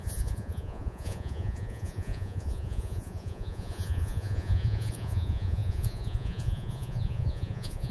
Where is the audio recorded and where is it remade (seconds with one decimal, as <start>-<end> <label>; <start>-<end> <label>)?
0.0-7.9 remade